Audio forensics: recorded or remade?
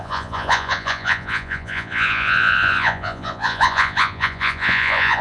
remade